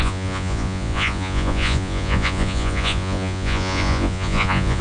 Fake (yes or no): yes